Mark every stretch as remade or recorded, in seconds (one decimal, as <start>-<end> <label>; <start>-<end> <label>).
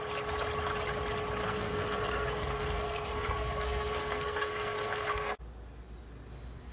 0.0-1.4 recorded; 1.4-5.4 remade; 5.4-6.7 recorded